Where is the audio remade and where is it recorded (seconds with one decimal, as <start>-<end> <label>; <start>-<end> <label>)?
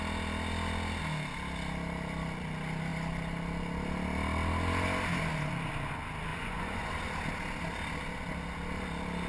0.0-6.3 recorded; 6.3-6.9 remade; 6.9-9.3 recorded